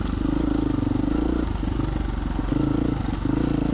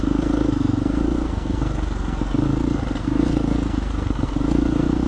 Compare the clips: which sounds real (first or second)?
first